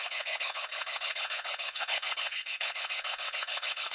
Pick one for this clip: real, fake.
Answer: fake